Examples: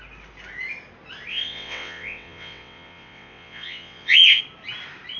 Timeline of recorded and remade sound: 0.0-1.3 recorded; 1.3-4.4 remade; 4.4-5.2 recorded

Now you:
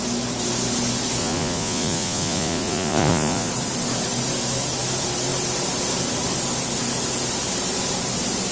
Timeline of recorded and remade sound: 0.0-1.2 recorded; 1.2-3.5 remade; 3.5-8.5 recorded

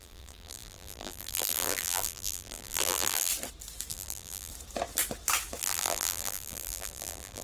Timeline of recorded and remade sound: 0.0-3.3 remade; 3.3-3.9 recorded; 3.9-4.5 remade; 4.5-5.6 recorded; 5.6-7.4 remade

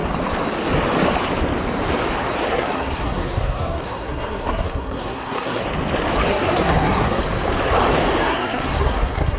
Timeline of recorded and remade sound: 0.0-2.5 recorded; 2.5-5.6 remade; 5.6-6.3 recorded; 6.3-7.2 remade; 7.2-8.2 recorded; 8.2-9.4 remade

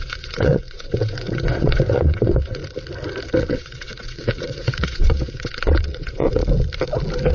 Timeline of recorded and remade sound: 0.0-2.6 remade; 2.6-3.4 recorded; 3.4-6.4 remade; 6.4-7.3 recorded

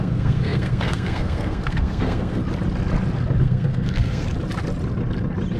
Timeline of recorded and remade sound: 0.0-2.4 remade; 2.4-3.4 recorded; 3.4-4.3 remade; 4.3-5.6 recorded